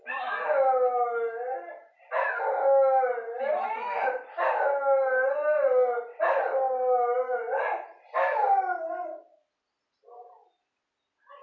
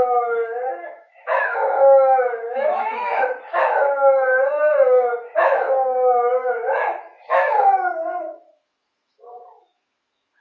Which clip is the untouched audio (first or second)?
first